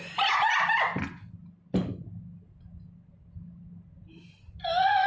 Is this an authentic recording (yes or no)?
yes